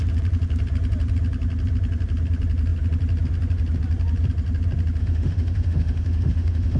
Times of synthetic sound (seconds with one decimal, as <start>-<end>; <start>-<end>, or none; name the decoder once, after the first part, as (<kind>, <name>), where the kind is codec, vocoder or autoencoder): 5.0-6.8 (autoencoder, DAC-VAE)